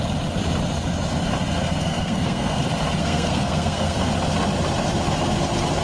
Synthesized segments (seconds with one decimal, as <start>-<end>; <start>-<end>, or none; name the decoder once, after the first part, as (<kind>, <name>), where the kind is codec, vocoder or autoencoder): 1.8-2.6 (codec, SNAC); 3.0-4.1